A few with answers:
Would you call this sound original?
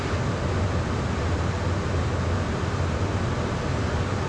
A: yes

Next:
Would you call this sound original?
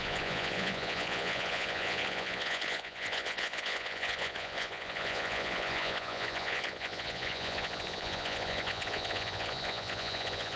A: no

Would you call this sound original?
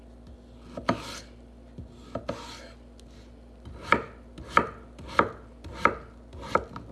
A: yes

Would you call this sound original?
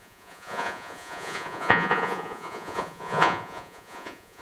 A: no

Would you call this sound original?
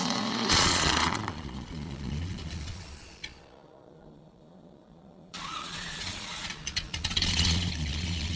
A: no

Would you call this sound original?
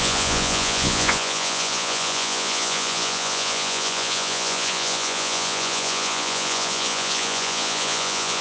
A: no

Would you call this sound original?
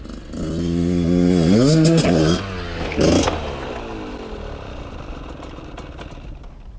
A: yes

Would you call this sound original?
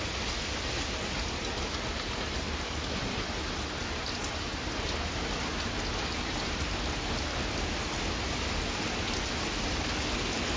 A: yes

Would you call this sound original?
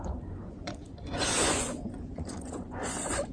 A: no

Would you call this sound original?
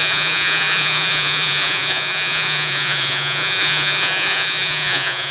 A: no